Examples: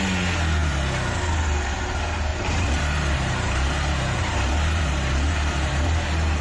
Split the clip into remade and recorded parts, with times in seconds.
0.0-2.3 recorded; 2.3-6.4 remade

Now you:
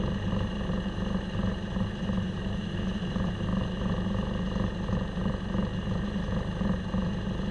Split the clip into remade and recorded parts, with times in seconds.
0.0-7.5 recorded

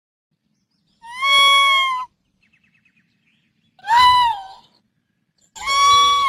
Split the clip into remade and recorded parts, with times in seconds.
0.0-3.8 recorded; 3.8-4.6 remade; 4.6-6.3 recorded

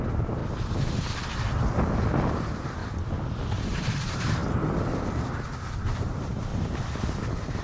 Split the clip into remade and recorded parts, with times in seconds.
0.0-0.4 remade; 0.4-2.3 recorded; 2.3-2.8 remade; 2.8-3.6 recorded; 3.6-4.4 remade; 4.4-5.8 recorded; 5.8-6.5 remade; 6.5-7.6 recorded

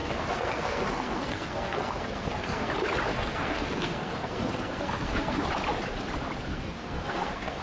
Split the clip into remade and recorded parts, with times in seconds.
0.0-2.7 remade; 2.7-3.1 recorded; 3.1-5.4 remade; 5.4-6.5 recorded; 6.5-7.6 remade

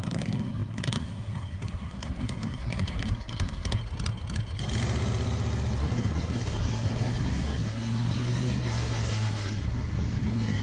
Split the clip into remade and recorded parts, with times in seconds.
0.0-3.8 remade; 3.8-5.8 recorded; 5.8-10.6 remade